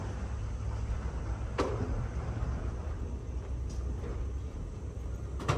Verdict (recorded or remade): recorded